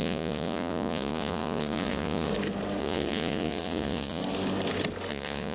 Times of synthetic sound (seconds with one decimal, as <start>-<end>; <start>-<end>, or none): 0.0-2.3; 2.8-4.2; 5.1-5.5